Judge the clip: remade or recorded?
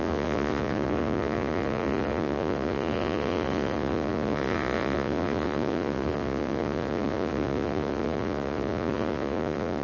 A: remade